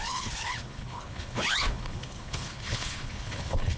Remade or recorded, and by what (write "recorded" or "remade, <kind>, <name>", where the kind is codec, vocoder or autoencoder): remade, codec, HILCodec